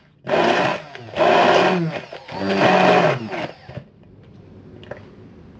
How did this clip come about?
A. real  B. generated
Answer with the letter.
A